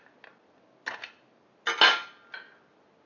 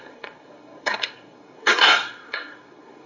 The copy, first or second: second